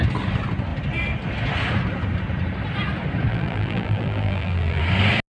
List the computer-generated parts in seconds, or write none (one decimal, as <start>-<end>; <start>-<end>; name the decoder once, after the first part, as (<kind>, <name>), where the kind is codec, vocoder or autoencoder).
3.3-4.8 (vocoder, BigVGAN v2)